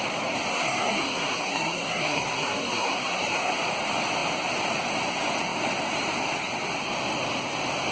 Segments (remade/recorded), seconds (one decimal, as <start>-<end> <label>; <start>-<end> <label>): 0.0-0.5 recorded; 0.5-3.5 remade; 3.5-7.9 recorded